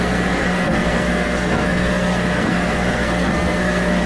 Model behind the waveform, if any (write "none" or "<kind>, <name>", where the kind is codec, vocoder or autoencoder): codec, SNAC